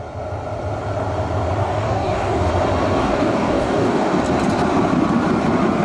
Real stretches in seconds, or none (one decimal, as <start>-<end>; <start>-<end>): 0.0-1.6; 2.5-3.0; 4.2-5.8